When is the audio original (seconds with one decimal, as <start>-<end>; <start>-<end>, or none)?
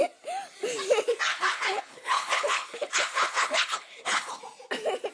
0.0-1.3; 4.4-5.1